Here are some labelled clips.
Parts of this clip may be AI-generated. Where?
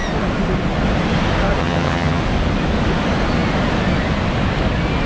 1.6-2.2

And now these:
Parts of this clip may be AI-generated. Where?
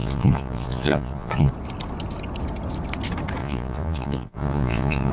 0.0-1.5; 3.4-5.1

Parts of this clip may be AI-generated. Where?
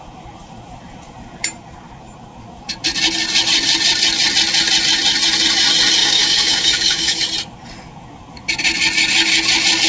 6.0-7.2